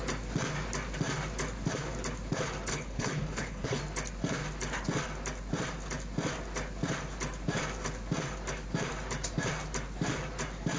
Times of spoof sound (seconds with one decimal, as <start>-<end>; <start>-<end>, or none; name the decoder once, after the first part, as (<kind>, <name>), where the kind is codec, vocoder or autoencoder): 2.7-3.8 (codec, HILCodec)